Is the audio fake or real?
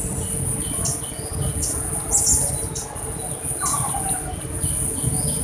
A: real